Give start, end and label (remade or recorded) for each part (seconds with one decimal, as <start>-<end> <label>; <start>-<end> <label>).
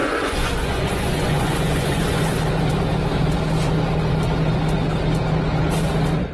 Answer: 0.0-2.2 remade; 2.2-6.3 recorded